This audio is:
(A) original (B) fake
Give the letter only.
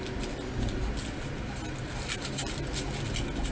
A